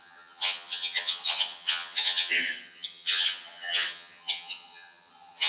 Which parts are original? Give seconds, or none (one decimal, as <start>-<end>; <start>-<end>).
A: none